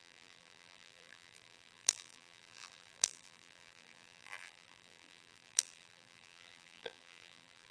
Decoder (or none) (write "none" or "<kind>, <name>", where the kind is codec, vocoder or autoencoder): vocoder, BigVGAN v2